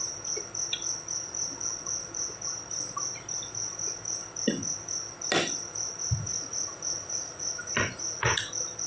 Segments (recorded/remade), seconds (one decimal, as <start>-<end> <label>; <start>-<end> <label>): 0.0-6.3 recorded; 6.3-8.4 remade; 8.4-8.9 recorded